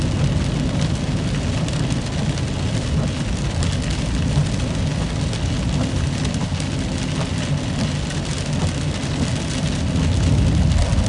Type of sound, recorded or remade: recorded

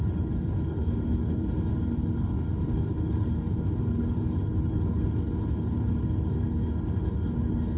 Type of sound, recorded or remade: remade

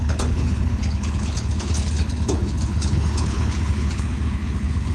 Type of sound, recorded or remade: remade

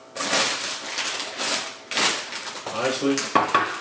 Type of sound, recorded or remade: recorded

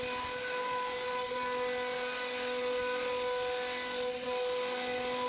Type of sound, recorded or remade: recorded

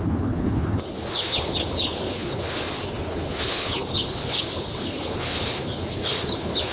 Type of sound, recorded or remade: remade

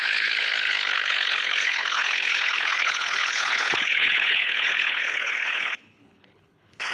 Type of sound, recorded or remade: remade